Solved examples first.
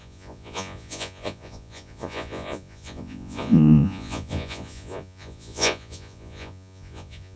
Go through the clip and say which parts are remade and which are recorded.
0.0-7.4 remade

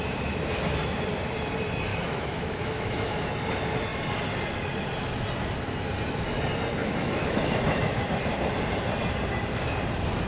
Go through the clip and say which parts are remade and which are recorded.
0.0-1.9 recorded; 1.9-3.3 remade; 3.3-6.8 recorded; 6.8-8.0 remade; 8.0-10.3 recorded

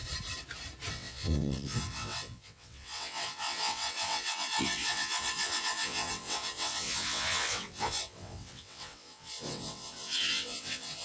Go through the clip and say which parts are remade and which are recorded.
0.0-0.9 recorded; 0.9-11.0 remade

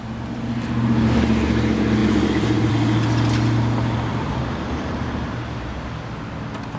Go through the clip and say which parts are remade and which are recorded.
0.0-2.0 recorded; 2.0-2.7 remade; 2.7-4.1 recorded; 4.1-5.4 remade; 5.4-6.8 recorded

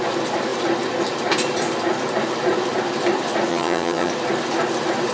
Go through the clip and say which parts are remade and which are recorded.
0.0-3.5 recorded; 3.5-4.1 remade; 4.1-5.1 recorded